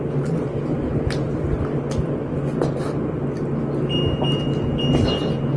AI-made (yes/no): no